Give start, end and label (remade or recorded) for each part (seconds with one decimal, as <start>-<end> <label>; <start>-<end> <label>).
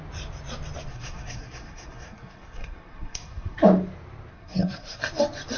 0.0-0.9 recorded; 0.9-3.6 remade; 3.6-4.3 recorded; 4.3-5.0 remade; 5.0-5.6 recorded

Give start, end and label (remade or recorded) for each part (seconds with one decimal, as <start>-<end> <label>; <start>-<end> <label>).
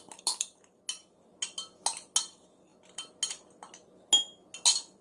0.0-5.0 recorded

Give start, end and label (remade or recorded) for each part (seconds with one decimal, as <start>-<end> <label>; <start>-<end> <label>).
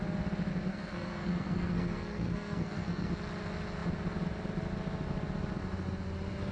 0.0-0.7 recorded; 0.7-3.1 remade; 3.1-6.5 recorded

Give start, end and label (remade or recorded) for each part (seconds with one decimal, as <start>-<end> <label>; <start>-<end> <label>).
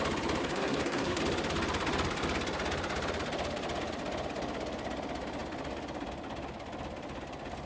0.0-0.4 recorded; 0.4-1.2 remade; 1.2-7.7 recorded